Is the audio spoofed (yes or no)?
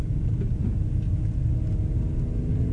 no